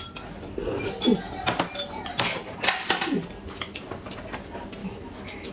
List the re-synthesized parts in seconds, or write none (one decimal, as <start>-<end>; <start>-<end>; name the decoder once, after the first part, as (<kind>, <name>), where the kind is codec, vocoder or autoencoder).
4.8-5.5 (autoencoder, DAC-VAE)